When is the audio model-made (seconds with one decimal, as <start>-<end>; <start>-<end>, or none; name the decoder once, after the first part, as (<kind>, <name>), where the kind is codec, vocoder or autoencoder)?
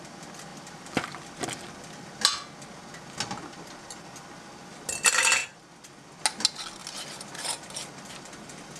none